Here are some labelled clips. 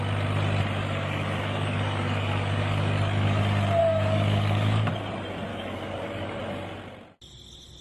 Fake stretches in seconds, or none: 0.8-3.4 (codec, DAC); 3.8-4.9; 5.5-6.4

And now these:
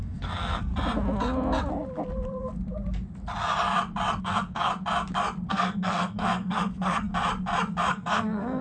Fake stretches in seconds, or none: 0.0-0.7 (codec, SNAC); 4.2-4.7; 5.5-7.1; 7.9-8.6

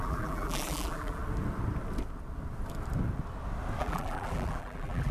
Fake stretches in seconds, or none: 0.0-1.2 (vocoder, BigVGAN v2); 3.8-5.1

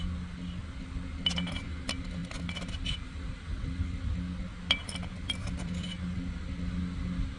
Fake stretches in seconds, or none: none